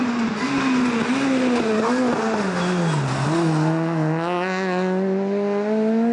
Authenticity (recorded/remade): recorded